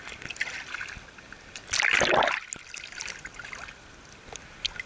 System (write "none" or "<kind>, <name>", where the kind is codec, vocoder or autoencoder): none